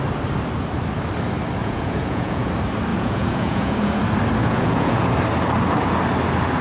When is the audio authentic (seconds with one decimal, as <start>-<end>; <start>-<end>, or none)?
0.0-1.6; 2.5-2.9; 4.0-4.4; 5.1-6.6